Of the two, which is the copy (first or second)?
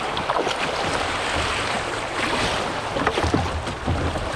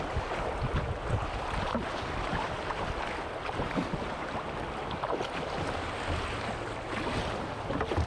first